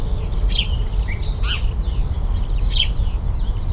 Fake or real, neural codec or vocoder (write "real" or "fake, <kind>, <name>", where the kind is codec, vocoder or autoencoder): real